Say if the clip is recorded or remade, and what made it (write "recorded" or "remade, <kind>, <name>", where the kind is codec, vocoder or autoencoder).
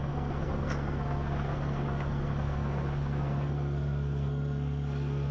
remade, codec, SNAC